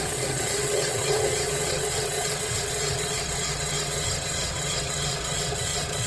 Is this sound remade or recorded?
remade